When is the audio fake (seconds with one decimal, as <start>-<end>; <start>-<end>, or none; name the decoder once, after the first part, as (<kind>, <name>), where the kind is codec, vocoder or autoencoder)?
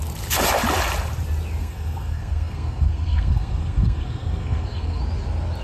1.6-5.0 (codec, SNAC)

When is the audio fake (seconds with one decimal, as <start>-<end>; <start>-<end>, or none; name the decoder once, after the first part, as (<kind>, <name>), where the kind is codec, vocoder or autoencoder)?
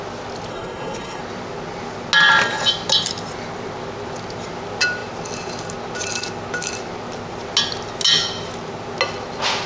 0.5-1.2 (codec, SNAC)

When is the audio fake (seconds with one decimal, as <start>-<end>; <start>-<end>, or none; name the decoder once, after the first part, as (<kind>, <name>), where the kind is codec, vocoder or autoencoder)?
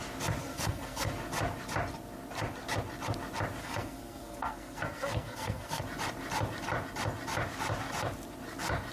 0.4-1.1 (codec, SNAC); 3.6-5.8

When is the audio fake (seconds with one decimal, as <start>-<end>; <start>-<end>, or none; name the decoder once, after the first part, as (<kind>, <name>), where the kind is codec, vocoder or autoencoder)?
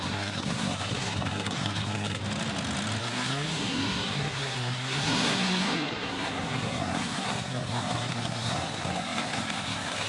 0.0-2.2 (codec, SNAC); 3.0-10.1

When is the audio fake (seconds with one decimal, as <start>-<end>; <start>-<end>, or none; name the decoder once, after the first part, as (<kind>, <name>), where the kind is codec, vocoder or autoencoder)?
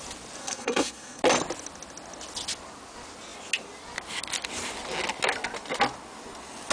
0.4-1.2 (codec, SNAC)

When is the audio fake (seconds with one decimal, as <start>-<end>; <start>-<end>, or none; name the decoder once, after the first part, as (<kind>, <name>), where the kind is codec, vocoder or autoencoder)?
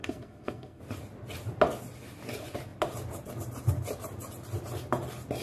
0.0-0.8 (codec, SNAC)